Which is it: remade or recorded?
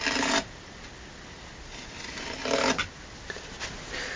recorded